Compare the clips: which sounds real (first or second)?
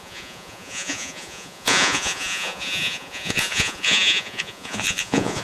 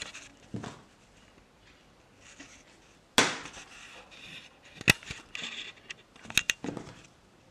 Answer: second